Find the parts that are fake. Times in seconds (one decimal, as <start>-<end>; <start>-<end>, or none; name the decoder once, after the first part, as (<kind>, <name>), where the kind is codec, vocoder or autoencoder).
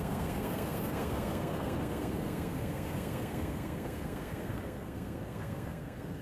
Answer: 0.0-6.2 (codec, SNAC)